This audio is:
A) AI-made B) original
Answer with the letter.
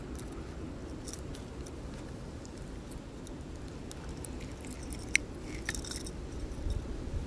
B